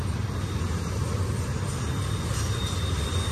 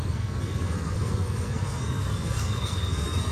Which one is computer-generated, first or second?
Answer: second